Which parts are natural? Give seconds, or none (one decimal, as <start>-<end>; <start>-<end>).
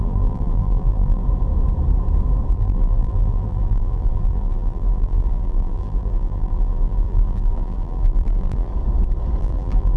1.2-2.5; 8.7-9.4